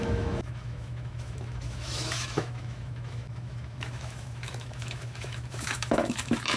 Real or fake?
fake